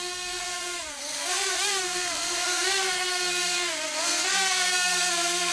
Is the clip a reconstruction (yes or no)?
yes